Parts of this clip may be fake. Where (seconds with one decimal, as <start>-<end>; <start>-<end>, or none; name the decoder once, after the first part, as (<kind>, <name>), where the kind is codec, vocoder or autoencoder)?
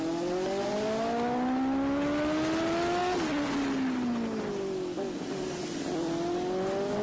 none